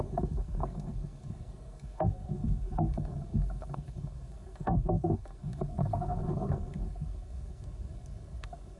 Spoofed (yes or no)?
yes